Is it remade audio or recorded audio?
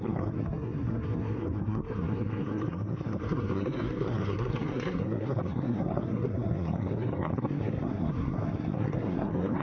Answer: remade